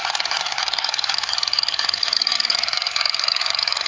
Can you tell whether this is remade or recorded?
remade